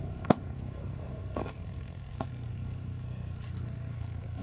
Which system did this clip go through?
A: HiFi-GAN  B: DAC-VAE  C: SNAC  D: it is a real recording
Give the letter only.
C